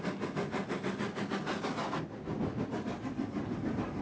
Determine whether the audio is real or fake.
real